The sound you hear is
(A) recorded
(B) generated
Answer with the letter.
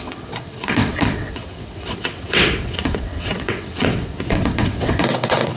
B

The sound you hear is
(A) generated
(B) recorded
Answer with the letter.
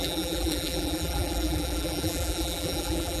A